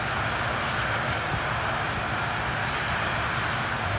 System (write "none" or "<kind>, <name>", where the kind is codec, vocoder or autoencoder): none